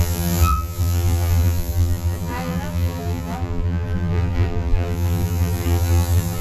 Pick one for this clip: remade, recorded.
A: remade